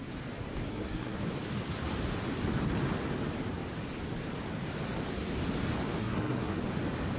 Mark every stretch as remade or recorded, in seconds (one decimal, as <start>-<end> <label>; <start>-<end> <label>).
0.0-0.7 recorded; 0.7-1.2 remade; 1.2-6.0 recorded; 6.0-6.6 remade; 6.6-7.2 recorded